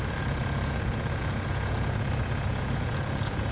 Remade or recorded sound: remade